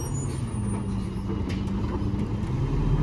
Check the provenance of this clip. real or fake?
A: real